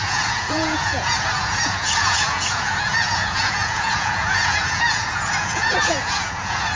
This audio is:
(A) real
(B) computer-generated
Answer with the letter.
B